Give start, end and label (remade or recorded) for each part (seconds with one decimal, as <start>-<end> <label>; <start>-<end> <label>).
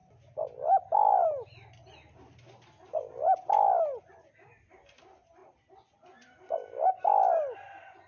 0.0-8.1 recorded